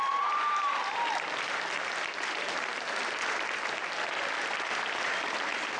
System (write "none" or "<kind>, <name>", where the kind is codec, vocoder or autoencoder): none